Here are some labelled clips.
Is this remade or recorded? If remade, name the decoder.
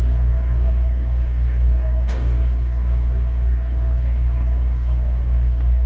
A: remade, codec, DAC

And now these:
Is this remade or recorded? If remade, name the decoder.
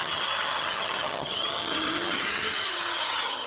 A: remade, vocoder, HiFi-GAN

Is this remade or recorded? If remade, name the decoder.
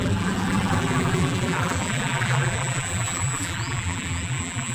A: remade, vocoder, BigVGAN v2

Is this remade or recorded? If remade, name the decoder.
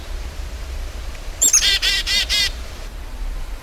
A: remade, vocoder, BigVGAN v2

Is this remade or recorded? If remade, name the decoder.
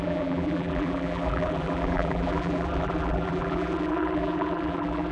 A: remade, vocoder, BigVGAN v2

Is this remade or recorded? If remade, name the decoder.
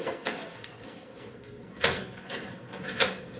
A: remade, codec, SNAC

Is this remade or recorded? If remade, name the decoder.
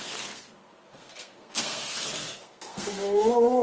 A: remade, codec, SNAC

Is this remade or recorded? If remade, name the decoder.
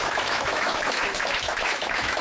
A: remade, autoencoder, DAC-VAE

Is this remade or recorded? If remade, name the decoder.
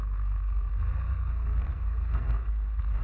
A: remade, codec, SNAC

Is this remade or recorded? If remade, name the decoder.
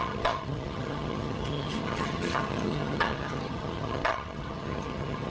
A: remade, vocoder, HiFi-GAN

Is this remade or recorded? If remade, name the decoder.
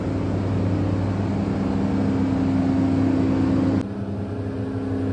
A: recorded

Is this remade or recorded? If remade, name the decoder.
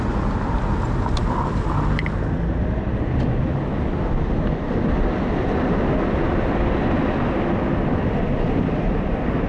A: recorded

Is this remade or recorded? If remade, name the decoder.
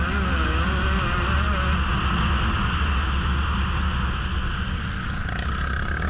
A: recorded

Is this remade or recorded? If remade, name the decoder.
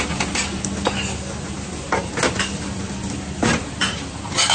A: recorded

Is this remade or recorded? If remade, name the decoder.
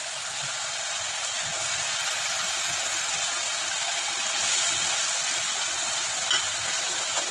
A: recorded